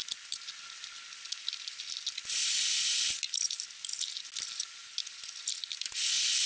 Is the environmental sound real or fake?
real